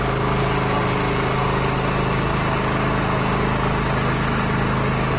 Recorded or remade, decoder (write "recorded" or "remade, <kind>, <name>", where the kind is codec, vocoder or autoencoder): recorded